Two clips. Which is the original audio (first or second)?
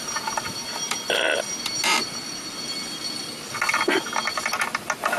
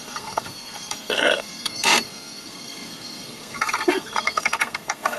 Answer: first